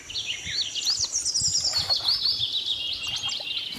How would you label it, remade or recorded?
recorded